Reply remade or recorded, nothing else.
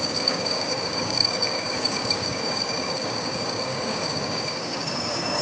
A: remade